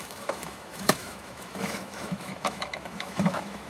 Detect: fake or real fake